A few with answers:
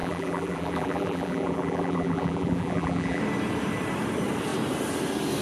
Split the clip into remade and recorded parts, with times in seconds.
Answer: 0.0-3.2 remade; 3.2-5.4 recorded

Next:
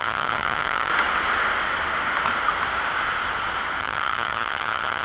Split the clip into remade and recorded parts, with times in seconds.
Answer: 0.0-0.9 remade; 0.9-3.8 recorded; 3.8-5.0 remade

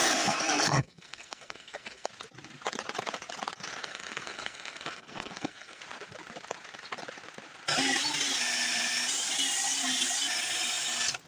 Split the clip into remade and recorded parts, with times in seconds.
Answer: 0.0-2.1 remade; 2.1-3.8 recorded; 3.8-5.8 remade; 5.8-11.3 recorded